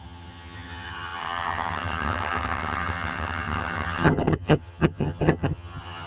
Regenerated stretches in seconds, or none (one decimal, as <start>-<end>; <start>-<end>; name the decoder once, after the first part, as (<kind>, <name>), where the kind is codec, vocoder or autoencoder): 0.0-6.1 (vocoder, HiFi-GAN)

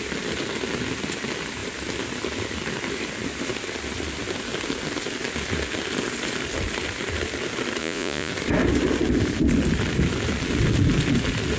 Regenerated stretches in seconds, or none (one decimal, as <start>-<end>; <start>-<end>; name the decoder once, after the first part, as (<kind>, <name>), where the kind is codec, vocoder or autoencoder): 7.8-8.3 (vocoder, Vocos)

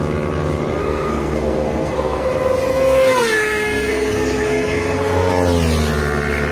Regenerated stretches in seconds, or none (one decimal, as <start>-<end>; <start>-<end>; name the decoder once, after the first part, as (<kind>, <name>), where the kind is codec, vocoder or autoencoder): 0.8-2.3 (codec, SNAC); 2.7-5.3

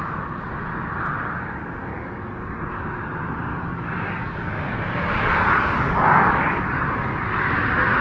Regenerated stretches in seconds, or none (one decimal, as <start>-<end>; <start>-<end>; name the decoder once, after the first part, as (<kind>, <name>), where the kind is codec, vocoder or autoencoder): 1.9-2.7 (codec, DAC); 3.5-7.5

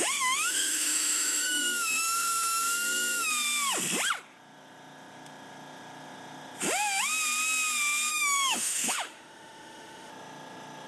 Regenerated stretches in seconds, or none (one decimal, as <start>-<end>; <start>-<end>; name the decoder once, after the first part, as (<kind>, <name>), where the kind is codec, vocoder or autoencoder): 0.0-3.3 (autoencoder, DAC-VAE); 8.1-10.1

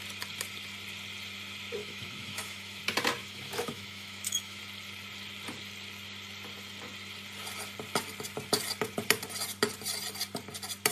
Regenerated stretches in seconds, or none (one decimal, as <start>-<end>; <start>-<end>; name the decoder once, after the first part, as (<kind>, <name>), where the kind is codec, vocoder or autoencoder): 1.8-2.8 (autoencoder, DAC-VAE); 3.2-4.6